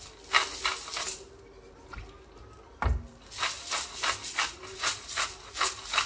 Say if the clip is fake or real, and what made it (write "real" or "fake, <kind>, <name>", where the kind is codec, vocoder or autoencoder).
real